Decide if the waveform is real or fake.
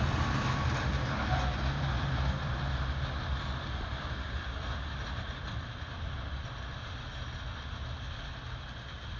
real